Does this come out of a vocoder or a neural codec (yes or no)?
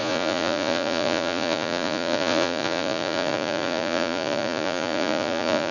yes